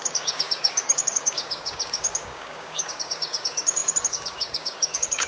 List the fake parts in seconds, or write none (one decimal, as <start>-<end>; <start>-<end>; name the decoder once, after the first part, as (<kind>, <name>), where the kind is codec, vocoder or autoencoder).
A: 0.0-5.3 (codec, DAC)